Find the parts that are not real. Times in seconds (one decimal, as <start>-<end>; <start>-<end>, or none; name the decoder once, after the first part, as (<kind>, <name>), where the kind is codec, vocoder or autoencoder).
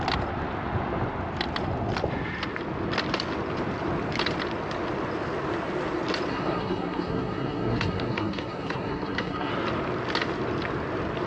6.3-9.5 (codec, SNAC)